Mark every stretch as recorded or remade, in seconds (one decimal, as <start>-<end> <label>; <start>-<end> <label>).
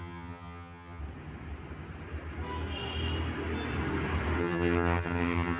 0.0-1.0 remade; 1.0-4.4 recorded; 4.4-5.6 remade